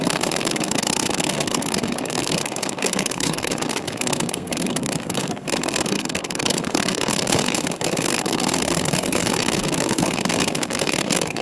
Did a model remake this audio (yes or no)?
yes